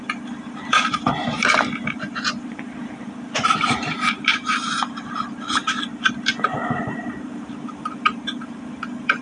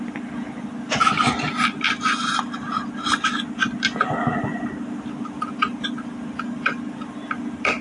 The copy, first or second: first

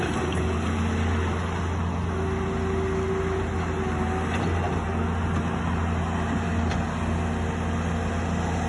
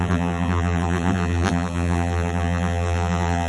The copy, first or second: second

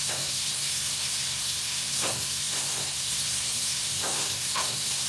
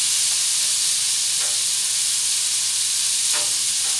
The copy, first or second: first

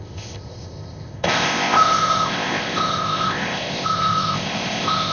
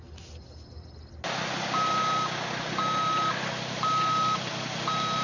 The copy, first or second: first